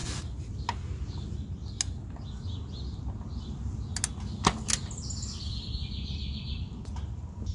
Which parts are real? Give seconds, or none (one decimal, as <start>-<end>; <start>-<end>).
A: 0.0-7.5